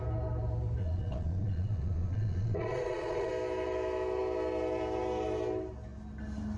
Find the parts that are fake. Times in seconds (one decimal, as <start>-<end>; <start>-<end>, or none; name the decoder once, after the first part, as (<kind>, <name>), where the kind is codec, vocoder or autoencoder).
0.8-3.3 (vocoder, Vocos)